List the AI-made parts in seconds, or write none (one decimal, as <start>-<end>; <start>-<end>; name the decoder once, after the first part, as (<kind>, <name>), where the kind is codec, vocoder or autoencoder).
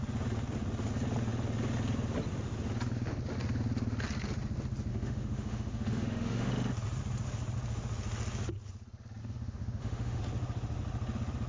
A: 4.9-6.5 (autoencoder, DAC-VAE); 9.2-10.2